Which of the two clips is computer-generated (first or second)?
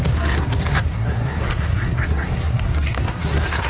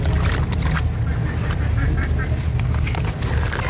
first